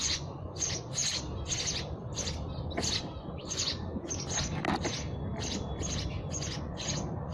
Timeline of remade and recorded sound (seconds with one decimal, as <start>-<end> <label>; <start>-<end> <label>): 0.0-1.0 remade; 1.0-3.2 recorded; 3.2-4.6 remade; 4.6-6.3 recorded; 6.3-7.3 remade